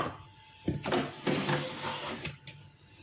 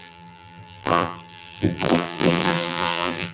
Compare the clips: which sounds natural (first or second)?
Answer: first